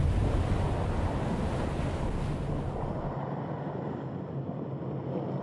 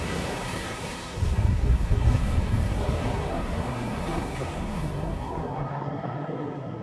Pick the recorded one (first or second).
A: first